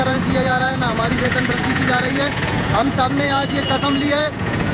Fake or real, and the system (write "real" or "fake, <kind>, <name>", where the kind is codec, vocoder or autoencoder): fake, vocoder, Vocos